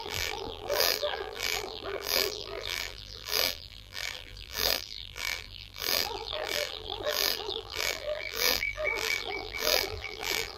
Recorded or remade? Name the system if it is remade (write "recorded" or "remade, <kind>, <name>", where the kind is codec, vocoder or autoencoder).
remade, vocoder, BigVGAN v2